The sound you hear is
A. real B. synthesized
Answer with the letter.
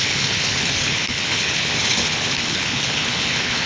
B